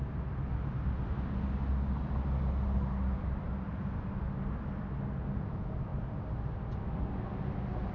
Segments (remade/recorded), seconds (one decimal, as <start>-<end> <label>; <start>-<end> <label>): 0.0-7.9 recorded